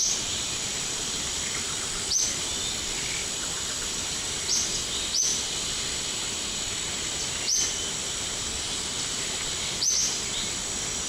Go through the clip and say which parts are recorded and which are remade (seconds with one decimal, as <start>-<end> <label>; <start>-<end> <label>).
0.0-11.1 recorded